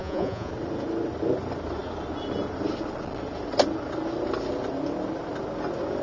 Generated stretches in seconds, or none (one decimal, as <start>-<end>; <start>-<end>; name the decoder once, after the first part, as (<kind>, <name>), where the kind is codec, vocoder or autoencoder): 0.0-0.5 (vocoder, Vocos)